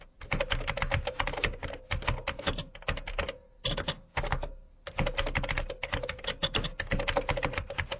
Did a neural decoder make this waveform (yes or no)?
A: no